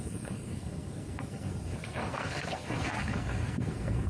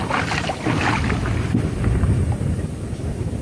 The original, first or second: second